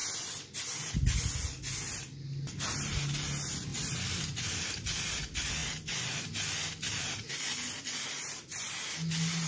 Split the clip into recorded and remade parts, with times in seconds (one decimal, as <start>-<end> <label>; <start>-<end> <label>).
0.0-0.9 remade; 0.9-3.7 recorded; 3.7-4.4 remade; 4.4-5.6 recorded; 5.6-6.3 remade; 6.3-9.5 recorded